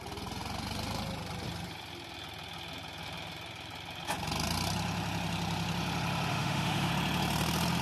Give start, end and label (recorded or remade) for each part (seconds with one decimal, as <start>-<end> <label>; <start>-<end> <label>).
0.0-6.3 recorded; 6.3-6.9 remade; 6.9-7.8 recorded